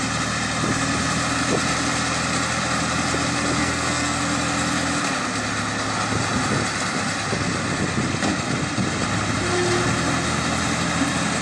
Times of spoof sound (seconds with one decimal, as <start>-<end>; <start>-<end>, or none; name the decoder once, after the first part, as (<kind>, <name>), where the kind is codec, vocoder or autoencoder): 3.6-4.2 (codec, SNAC)